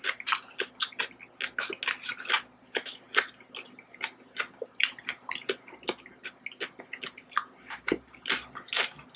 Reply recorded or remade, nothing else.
recorded